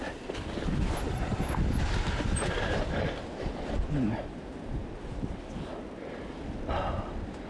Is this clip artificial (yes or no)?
no